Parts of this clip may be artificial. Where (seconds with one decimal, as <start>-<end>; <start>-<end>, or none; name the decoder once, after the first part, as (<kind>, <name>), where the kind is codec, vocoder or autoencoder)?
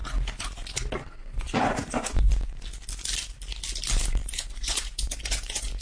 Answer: 1.2-2.3 (vocoder, Vocos); 4.2-5.8